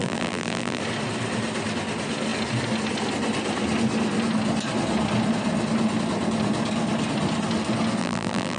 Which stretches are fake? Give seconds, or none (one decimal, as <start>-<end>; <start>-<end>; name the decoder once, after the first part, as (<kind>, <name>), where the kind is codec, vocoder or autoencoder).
0.0-0.8 (vocoder, BigVGAN v2); 8.0-8.6